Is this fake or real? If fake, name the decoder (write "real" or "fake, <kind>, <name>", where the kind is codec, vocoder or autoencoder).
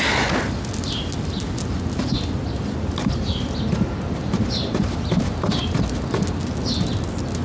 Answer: real